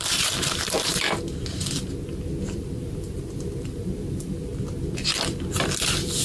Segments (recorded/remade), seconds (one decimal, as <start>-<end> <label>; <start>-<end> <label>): 0.0-0.9 remade; 0.9-2.4 recorded; 2.4-4.5 remade; 4.5-6.2 recorded